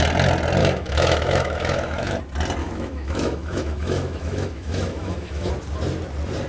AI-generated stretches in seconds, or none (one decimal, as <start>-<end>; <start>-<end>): 0.6-2.2; 2.6-5.5